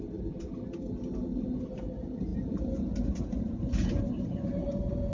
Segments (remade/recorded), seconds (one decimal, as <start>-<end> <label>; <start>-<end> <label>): 0.0-5.1 recorded